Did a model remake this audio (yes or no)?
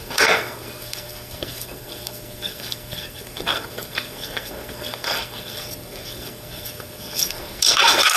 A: yes